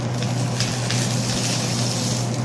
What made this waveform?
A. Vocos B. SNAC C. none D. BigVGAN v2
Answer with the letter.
C